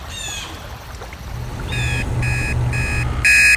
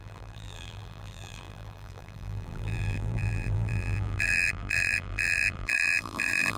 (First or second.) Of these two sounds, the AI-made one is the second